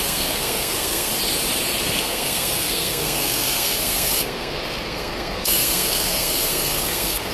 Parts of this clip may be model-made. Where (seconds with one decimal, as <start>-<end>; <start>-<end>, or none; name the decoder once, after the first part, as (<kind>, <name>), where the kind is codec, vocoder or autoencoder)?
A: 0.0-1.1 (codec, SNAC); 2.0-7.3